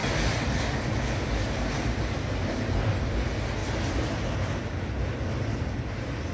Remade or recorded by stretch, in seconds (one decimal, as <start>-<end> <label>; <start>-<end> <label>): 0.0-0.6 remade; 0.6-6.3 recorded